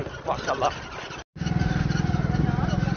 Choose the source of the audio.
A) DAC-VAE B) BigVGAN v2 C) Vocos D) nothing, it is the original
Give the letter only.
D